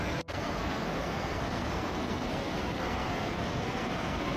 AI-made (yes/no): yes